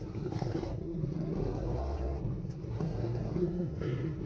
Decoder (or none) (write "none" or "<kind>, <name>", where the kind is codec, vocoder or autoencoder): codec, SNAC